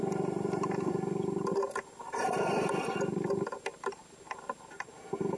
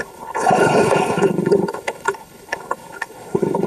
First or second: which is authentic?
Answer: first